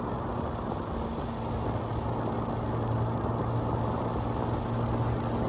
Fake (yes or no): no